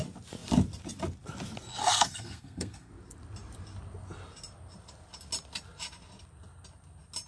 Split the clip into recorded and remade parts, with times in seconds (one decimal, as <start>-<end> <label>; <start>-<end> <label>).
0.0-1.8 recorded; 1.8-2.9 remade; 2.9-7.3 recorded